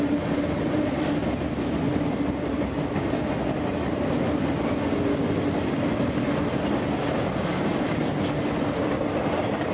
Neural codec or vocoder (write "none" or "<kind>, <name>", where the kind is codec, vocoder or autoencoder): none